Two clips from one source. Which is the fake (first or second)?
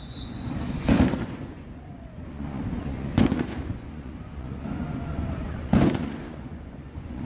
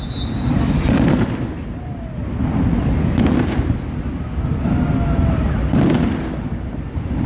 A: first